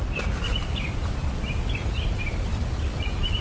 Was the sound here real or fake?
real